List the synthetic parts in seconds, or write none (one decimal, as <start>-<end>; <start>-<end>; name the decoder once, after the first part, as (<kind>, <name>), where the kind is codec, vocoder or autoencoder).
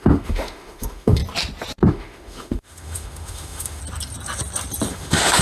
0.0-1.2 (autoencoder, DAC-VAE); 1.9-3.8; 4.9-5.4